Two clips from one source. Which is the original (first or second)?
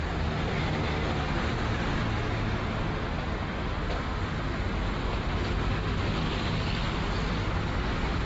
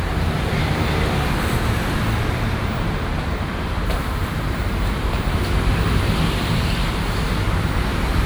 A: first